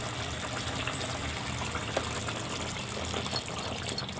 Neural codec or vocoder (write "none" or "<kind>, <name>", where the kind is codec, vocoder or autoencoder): vocoder, BigVGAN v2